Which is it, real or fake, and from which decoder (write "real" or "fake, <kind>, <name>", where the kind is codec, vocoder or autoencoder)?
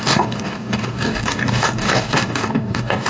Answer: fake, codec, DAC